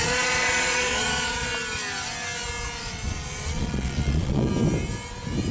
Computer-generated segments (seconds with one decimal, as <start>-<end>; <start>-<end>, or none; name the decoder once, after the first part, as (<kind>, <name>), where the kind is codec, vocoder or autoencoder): 0.0-1.5 (vocoder, Vocos); 2.8-4.5